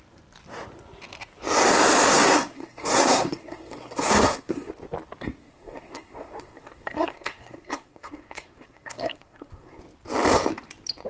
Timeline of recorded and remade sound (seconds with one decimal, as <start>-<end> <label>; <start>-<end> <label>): 0.0-2.1 recorded; 2.1-4.7 remade; 4.7-5.4 recorded; 5.4-9.8 remade; 9.8-11.1 recorded